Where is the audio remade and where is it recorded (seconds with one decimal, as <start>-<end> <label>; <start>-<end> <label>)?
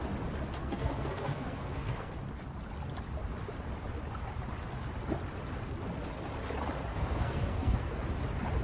0.0-0.6 recorded; 0.6-2.1 remade; 2.1-6.9 recorded; 6.9-8.0 remade; 8.0-8.6 recorded